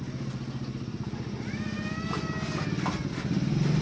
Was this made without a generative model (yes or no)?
yes